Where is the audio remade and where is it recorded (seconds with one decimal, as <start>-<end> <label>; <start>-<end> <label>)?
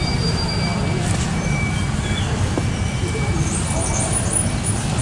0.0-5.0 remade